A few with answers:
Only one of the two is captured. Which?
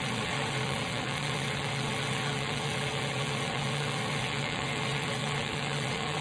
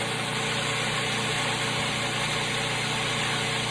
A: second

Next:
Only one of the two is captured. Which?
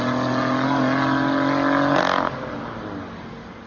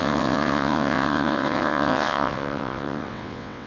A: first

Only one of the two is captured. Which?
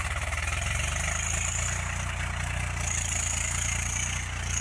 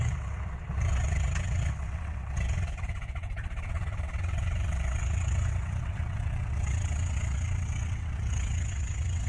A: first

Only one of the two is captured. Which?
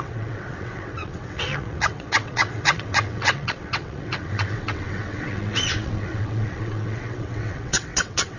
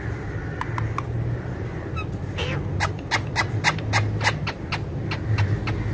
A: second